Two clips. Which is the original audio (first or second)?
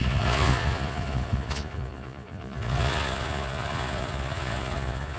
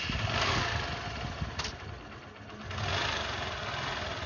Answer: second